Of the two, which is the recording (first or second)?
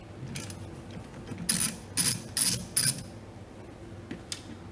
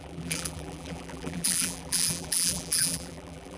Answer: first